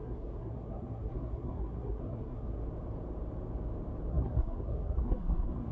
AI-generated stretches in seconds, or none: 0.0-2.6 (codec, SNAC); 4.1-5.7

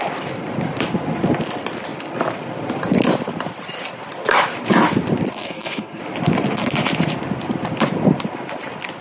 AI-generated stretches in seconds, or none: 5.4-6.0 (codec, SNAC)

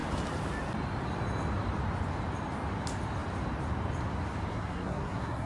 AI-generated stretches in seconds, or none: 4.5-5.5 (codec, SNAC)

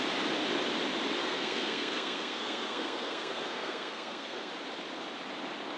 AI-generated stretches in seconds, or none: 1.2-4.5 (codec, SNAC)

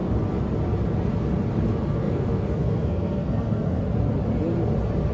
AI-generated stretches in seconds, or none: 2.0-3.8 (codec, SNAC)

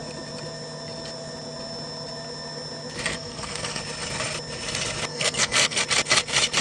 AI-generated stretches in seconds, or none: 3.1-3.8 (codec, SNAC); 5.1-5.8

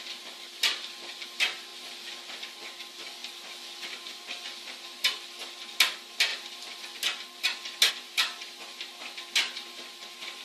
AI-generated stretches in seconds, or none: none